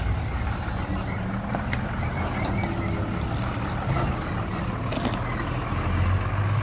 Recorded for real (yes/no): yes